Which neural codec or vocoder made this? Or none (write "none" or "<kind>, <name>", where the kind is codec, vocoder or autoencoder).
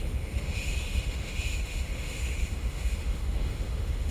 autoencoder, DAC-VAE